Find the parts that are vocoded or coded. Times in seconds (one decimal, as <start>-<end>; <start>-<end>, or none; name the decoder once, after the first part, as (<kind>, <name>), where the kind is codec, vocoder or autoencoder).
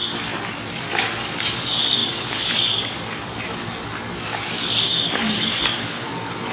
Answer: 0.7-6.5 (codec, DAC)